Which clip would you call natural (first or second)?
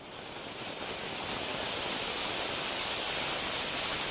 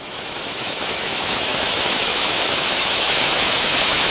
first